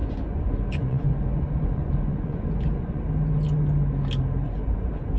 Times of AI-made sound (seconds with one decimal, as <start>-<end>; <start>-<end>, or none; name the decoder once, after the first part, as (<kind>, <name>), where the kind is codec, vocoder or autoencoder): 0.0-3.0 (vocoder, Vocos); 4.4-5.2